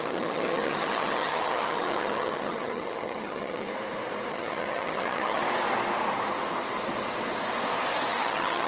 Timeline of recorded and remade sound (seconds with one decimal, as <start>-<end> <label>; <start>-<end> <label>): 0.0-3.7 remade; 3.7-4.3 recorded; 4.3-5.4 remade; 5.4-8.1 recorded; 8.1-8.7 remade